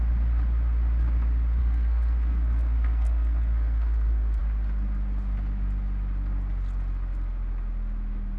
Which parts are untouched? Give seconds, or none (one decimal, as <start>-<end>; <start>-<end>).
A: 0.0-1.6; 4.4-8.4

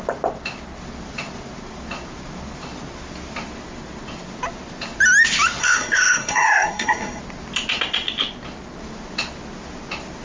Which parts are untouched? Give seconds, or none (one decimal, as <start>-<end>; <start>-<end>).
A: 0.0-5.6; 7.2-10.2

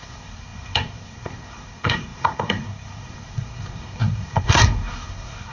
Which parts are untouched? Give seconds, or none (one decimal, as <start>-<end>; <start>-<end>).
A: none

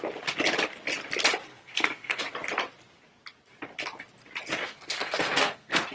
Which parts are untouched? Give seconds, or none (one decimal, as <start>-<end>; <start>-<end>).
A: 0.0-1.5; 2.2-4.6